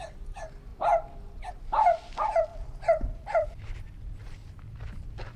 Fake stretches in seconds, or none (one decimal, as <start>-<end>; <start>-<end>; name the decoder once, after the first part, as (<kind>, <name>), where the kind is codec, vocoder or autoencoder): 2.5-4.0 (vocoder, BigVGAN v2)